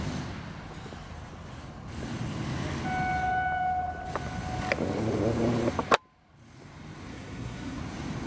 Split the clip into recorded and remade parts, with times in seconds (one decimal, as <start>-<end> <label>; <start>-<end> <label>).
0.0-7.1 recorded; 7.1-7.8 remade; 7.8-8.3 recorded